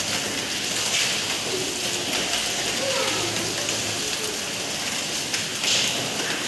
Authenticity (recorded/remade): recorded